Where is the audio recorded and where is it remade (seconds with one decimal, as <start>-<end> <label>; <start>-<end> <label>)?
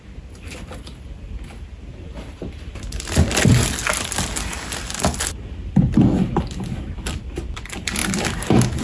0.0-3.8 remade; 3.8-7.2 recorded; 7.2-8.0 remade; 8.0-8.8 recorded